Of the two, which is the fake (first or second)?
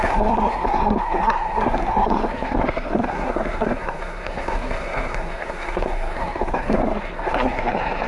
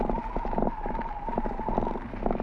first